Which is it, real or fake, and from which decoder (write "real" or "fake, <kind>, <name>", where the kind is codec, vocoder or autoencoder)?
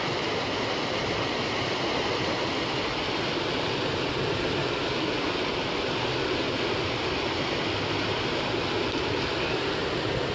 real